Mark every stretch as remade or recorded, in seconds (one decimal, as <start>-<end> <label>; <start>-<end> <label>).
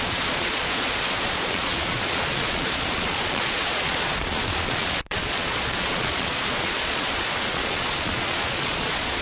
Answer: 0.0-9.2 remade